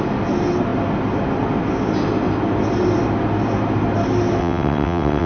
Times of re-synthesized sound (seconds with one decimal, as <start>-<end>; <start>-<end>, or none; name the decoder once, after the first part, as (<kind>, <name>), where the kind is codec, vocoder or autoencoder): 4.4-5.3 (vocoder, WaveNeXt)